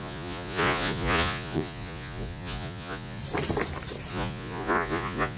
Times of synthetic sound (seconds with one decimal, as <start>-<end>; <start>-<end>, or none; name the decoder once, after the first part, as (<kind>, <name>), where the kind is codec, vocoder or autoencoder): 0.0-3.2 (vocoder, Vocos); 4.1-5.4